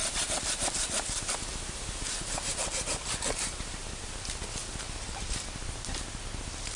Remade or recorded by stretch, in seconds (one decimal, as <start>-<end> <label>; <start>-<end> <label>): 0.0-4.1 remade; 4.1-6.8 recorded